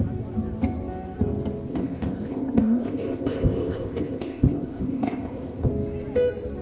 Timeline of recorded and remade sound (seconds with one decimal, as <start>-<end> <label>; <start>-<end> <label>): 0.0-1.7 recorded; 1.7-5.7 remade; 5.7-6.6 recorded